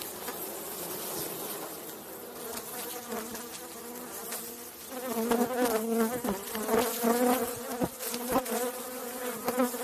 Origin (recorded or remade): recorded